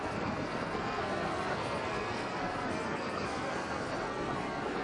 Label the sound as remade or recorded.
remade